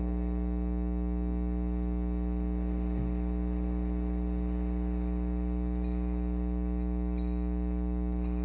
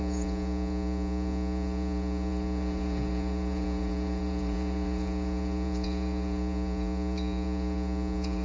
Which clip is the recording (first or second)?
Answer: first